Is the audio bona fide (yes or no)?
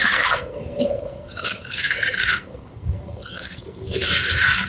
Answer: no